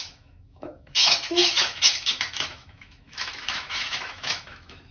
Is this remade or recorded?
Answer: remade